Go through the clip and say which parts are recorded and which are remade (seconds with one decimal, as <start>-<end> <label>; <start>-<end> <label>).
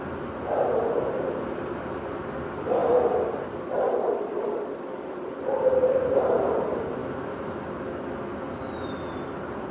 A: 0.0-2.8 remade; 2.8-5.0 recorded; 5.0-7.0 remade; 7.0-8.8 recorded; 8.8-9.7 remade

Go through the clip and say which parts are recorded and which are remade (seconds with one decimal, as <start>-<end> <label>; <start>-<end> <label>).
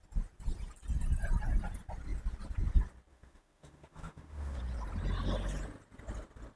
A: 0.0-3.1 recorded; 3.1-4.6 remade; 4.6-6.6 recorded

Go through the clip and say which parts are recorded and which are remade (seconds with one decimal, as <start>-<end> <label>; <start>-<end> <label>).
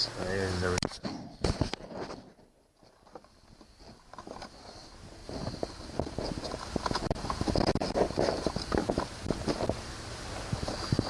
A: 0.0-0.9 recorded; 0.9-2.3 remade; 2.3-7.8 recorded; 7.8-9.8 remade; 9.8-11.1 recorded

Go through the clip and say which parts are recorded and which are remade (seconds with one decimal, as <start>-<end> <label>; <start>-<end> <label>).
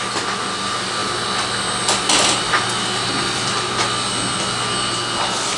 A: 0.0-5.6 recorded